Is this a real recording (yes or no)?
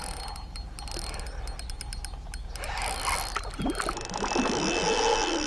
yes